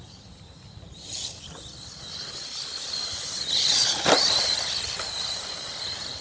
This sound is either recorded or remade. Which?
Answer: recorded